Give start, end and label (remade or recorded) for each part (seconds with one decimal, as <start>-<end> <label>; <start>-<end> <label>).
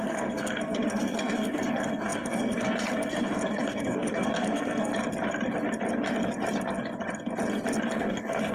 0.0-4.9 remade; 4.9-8.0 recorded; 8.0-8.5 remade